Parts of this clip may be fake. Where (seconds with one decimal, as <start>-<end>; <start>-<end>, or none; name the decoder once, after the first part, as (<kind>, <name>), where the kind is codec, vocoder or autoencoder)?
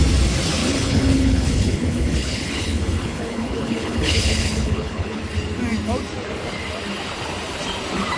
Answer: 0.6-5.2 (codec, HILCodec)